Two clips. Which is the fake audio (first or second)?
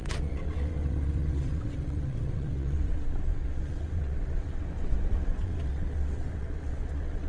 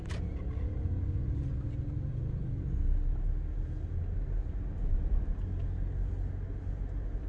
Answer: first